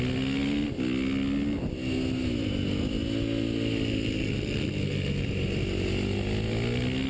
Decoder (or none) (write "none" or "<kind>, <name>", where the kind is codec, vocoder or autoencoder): none